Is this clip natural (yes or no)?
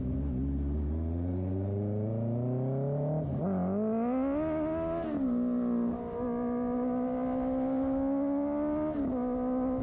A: yes